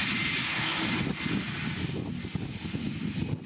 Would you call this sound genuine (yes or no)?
yes